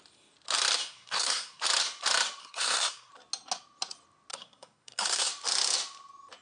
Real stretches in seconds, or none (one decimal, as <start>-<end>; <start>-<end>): 0.0-0.8; 1.6-2.4; 3.1-4.3; 5.3-6.4